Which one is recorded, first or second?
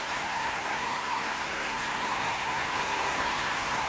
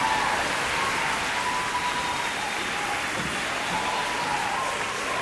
second